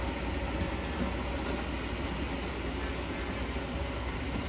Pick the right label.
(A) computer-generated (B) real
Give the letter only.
B